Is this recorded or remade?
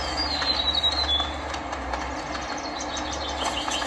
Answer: recorded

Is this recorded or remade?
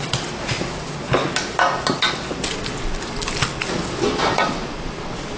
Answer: recorded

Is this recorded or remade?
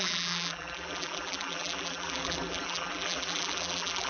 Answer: remade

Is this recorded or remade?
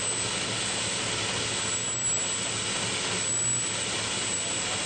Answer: recorded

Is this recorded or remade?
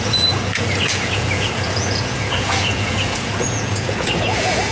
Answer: remade